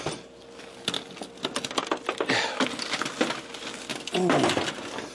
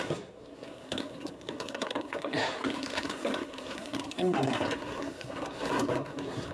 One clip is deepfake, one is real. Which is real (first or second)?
first